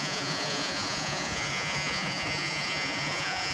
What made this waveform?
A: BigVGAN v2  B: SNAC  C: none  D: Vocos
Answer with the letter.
D